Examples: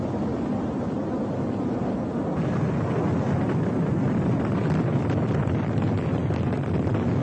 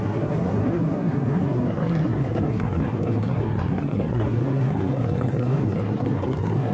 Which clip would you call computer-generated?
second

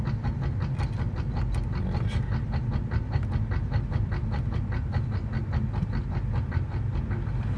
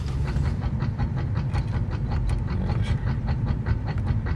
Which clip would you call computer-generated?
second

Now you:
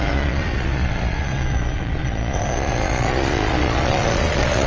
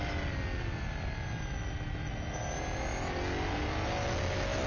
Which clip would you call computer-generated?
first